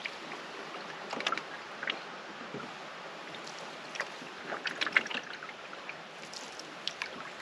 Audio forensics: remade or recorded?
recorded